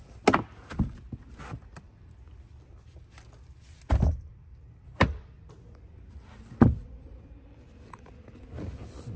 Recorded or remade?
recorded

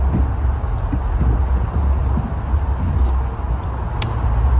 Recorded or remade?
recorded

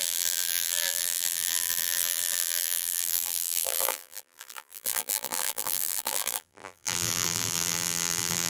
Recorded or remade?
remade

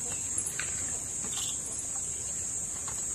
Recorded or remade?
recorded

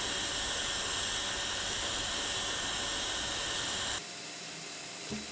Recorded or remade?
recorded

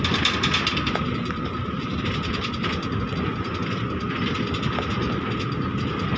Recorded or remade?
recorded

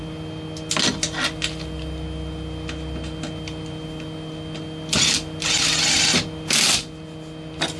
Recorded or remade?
recorded